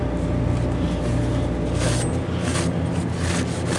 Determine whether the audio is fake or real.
real